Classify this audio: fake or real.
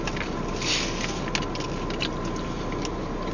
real